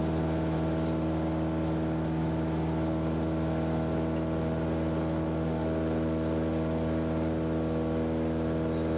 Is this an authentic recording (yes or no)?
yes